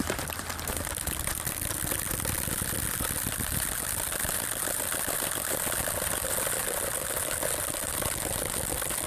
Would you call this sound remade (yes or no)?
yes